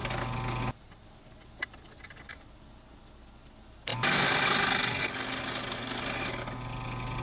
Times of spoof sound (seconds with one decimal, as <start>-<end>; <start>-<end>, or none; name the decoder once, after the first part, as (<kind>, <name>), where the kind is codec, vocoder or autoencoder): none